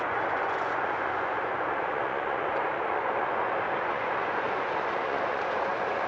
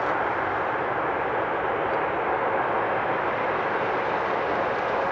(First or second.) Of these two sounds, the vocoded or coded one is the first